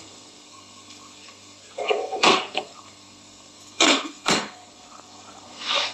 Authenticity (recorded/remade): remade